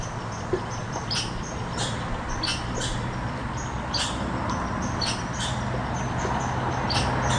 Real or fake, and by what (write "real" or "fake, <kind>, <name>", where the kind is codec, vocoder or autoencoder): real